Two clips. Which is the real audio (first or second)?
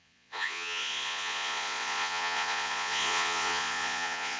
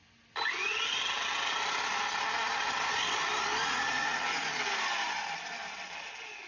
second